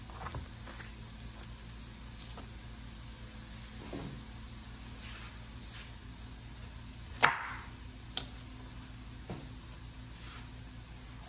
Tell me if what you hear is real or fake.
real